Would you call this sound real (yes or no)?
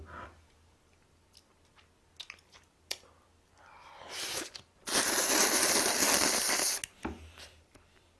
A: yes